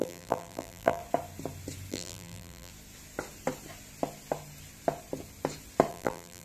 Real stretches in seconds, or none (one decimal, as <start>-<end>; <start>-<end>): 1.0-1.9; 2.7-5.9